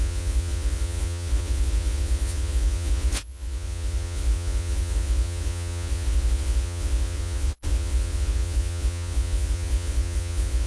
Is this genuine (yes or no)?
no